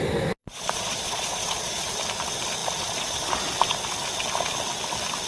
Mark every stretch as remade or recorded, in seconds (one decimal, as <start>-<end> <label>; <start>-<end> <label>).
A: 0.0-0.4 recorded; 0.4-1.9 remade; 1.9-5.3 recorded